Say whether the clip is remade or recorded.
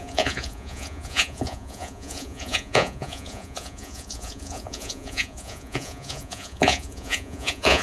remade